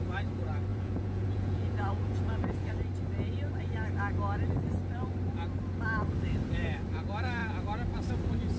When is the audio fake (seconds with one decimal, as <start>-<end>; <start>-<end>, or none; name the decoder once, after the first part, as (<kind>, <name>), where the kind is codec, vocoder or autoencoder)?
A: 0.7-2.7 (vocoder, Vocos)